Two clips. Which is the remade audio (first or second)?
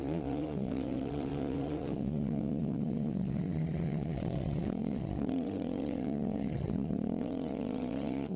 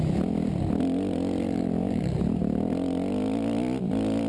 first